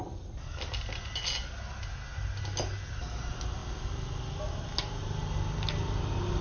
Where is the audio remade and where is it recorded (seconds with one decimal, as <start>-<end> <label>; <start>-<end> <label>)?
0.0-6.4 recorded